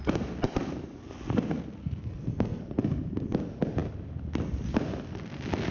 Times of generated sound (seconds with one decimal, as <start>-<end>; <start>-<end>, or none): 1.8-2.6

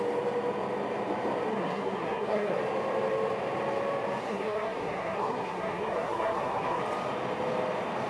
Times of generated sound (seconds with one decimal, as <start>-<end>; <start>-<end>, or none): 1.5-2.6; 4.2-6.8

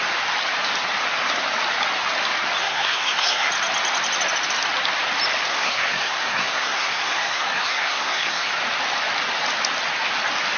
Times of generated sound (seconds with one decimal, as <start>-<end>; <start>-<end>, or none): 2.6-3.5; 5.5-8.5

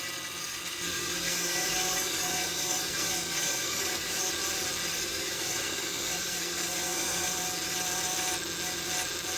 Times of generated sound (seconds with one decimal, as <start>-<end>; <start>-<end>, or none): 0.4-4.3; 4.9-7.3

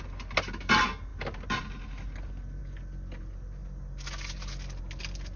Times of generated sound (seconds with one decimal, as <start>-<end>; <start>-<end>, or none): none

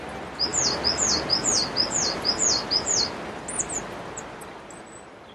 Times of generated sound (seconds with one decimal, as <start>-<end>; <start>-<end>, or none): none